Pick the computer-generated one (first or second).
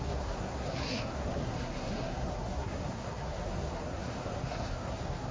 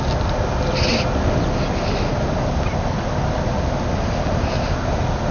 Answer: first